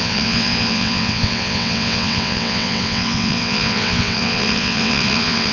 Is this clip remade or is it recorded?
remade